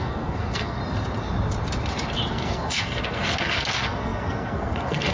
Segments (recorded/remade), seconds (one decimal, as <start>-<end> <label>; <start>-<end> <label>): 0.0-0.8 remade; 0.8-2.3 recorded; 2.3-5.1 remade